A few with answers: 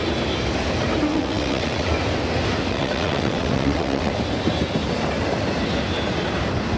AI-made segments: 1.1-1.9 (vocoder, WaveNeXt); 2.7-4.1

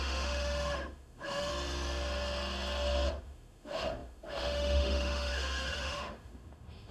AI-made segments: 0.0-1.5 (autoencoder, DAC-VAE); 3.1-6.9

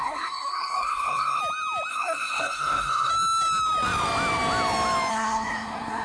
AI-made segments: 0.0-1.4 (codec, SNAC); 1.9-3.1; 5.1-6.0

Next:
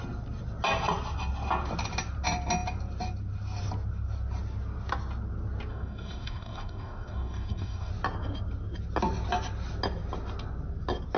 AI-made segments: 5.7-7.9 (codec, DAC)